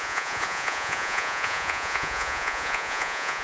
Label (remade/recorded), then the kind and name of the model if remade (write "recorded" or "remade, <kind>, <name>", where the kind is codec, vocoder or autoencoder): remade, vocoder, Vocos